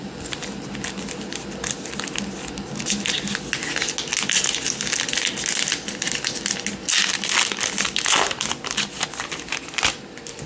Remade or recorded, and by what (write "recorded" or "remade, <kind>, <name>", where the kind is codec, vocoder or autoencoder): recorded